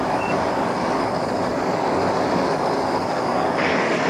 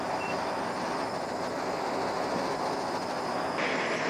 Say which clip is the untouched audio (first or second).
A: second